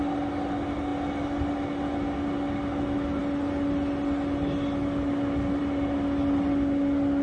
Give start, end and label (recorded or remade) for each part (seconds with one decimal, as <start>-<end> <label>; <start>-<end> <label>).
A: 0.0-7.2 recorded